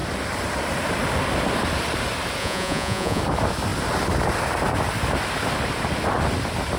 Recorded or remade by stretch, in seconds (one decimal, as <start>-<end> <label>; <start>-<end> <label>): 0.0-2.4 recorded; 2.4-3.2 remade; 3.2-6.8 recorded